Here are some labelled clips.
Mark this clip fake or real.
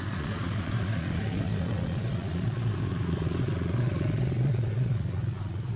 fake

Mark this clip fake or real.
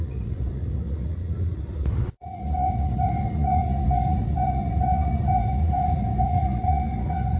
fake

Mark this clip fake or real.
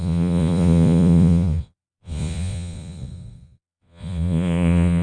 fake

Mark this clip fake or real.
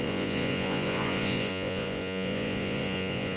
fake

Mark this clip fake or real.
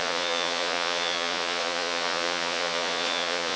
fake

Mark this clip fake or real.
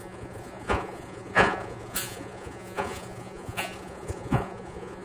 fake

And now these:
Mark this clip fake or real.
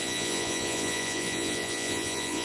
fake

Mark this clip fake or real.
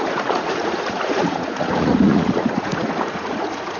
fake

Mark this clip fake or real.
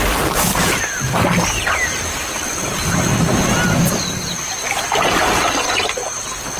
real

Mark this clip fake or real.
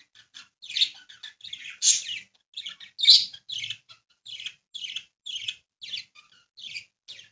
real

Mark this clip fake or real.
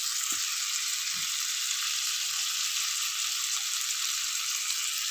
real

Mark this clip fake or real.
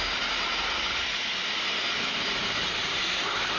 real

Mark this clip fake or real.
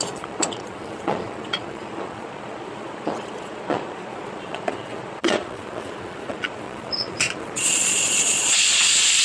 fake